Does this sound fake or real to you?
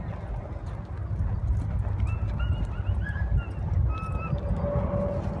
real